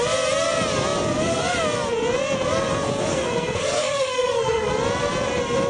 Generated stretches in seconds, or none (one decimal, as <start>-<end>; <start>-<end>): 3.1-4.7

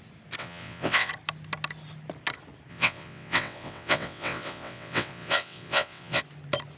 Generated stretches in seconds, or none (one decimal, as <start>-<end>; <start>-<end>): 0.4-1.1; 2.7-6.2

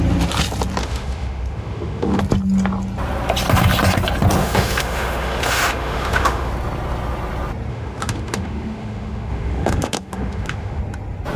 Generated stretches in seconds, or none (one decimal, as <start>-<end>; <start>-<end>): 0.8-2.2; 4.4-6.5; 7.7-10.8

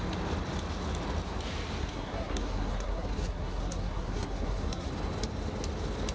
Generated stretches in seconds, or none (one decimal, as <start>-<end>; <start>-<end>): 1.8-4.9

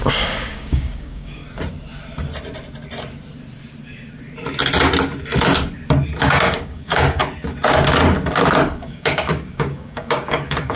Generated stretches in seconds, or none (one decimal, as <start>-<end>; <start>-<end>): 0.0-1.4; 6.2-7.2; 8.7-10.8